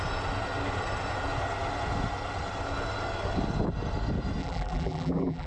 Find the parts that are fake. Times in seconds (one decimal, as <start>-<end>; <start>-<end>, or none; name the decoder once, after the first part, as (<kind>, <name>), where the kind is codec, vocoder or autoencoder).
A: 4.4-5.5 (vocoder, BigVGAN v2)